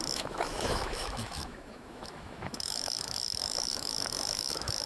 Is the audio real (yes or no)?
no